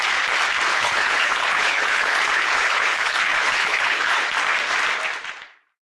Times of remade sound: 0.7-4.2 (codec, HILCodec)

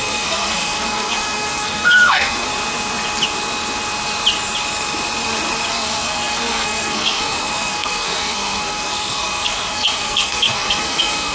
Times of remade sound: 0.0-2.5 (codec, SNAC); 5.7-11.3